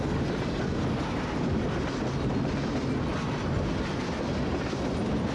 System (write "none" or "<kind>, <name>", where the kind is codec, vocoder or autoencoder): none